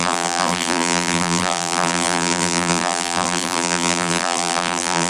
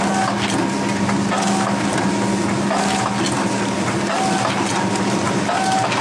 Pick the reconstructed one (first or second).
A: first